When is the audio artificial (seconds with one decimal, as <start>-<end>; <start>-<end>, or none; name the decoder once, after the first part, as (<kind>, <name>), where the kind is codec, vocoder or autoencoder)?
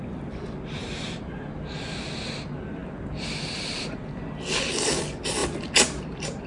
0.8-1.4 (vocoder, BigVGAN v2)